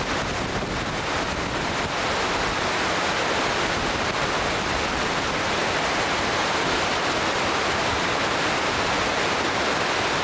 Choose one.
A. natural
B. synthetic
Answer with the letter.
A